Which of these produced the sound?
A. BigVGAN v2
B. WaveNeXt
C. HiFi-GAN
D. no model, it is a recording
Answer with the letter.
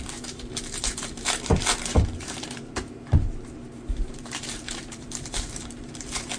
A